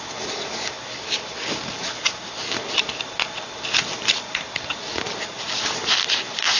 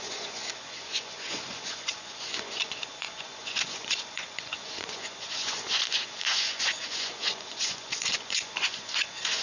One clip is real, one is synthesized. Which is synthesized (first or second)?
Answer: second